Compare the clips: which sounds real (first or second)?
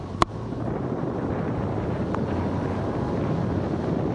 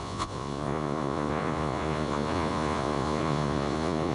first